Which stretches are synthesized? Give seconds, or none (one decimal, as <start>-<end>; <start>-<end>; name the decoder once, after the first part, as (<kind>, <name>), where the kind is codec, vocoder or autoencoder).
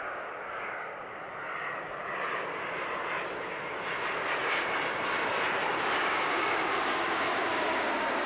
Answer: 0.0-1.2 (codec, DAC); 5.8-8.3